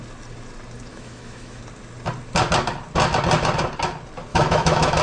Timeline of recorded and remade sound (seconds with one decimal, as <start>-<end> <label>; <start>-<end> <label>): 0.0-0.9 recorded; 0.9-1.6 remade; 1.6-4.3 recorded; 4.3-5.0 remade